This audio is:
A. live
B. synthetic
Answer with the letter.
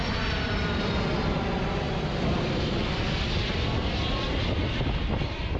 A